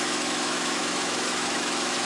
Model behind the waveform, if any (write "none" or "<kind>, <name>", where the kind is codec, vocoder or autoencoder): autoencoder, DAC-VAE